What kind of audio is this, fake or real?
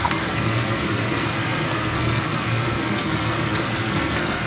fake